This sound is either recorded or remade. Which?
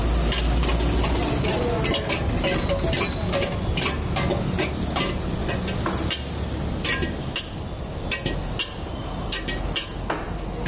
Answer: recorded